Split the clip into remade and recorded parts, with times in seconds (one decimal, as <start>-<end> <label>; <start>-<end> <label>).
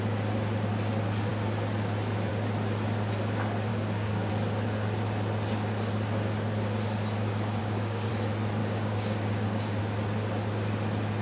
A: 0.0-3.7 recorded; 3.7-4.3 remade; 4.3-7.6 recorded; 7.6-8.1 remade; 8.1-8.6 recorded; 8.6-9.8 remade; 9.8-11.2 recorded